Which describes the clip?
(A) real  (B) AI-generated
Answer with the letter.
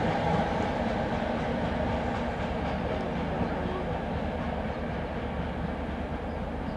A